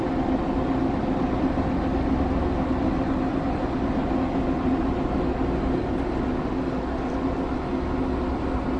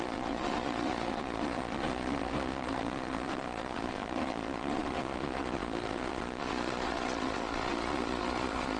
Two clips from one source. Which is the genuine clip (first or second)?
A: first